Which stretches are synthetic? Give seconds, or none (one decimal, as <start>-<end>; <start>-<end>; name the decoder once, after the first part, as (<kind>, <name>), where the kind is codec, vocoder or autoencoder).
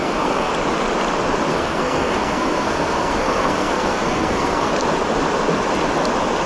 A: 0.0-0.5 (codec, SNAC); 1.5-4.7